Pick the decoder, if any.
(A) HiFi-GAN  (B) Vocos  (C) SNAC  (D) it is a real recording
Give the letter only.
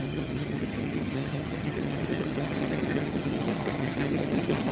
A